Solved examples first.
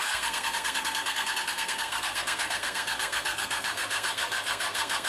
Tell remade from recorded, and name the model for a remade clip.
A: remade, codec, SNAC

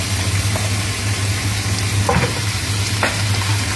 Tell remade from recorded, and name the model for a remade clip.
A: recorded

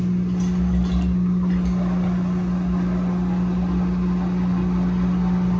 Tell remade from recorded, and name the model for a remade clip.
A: recorded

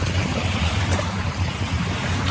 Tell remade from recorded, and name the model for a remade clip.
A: remade, vocoder, BigVGAN v2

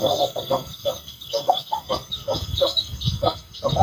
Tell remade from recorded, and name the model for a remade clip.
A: remade, codec, SNAC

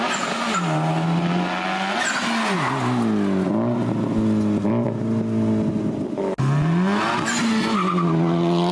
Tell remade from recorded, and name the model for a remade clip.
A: recorded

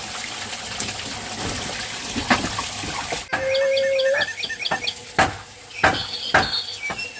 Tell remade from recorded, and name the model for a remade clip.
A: recorded